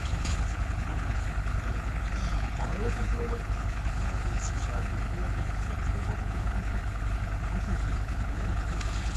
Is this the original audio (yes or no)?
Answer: no